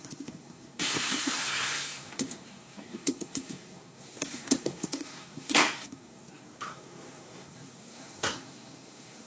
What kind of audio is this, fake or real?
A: fake